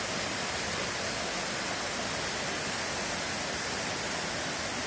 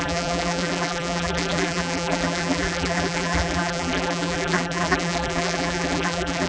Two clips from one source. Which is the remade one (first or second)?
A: second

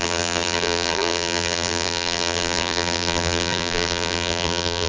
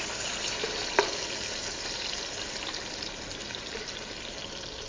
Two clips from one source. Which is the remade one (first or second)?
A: first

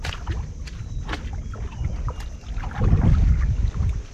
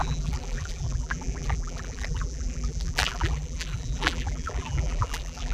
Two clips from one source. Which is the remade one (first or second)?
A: second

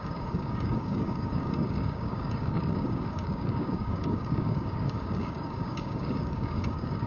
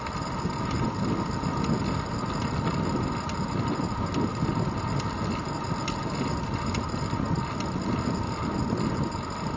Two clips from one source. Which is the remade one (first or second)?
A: first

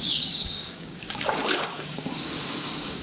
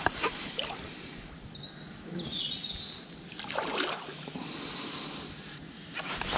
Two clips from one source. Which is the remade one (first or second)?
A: first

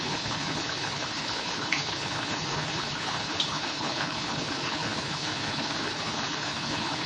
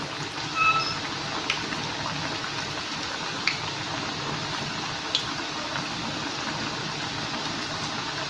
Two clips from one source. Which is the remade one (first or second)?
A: first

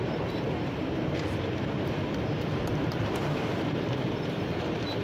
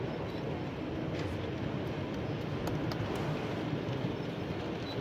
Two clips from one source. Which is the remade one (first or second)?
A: first